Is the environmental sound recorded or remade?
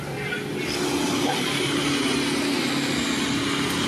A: recorded